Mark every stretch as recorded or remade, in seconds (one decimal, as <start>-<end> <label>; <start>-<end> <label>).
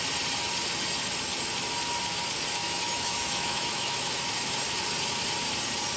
0.0-2.6 recorded; 2.6-4.2 remade; 4.2-6.0 recorded